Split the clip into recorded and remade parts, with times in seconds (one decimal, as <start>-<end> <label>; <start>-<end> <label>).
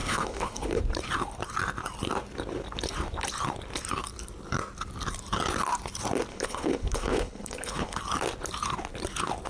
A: 0.0-0.8 remade; 0.8-6.3 recorded; 6.3-8.0 remade; 8.0-9.5 recorded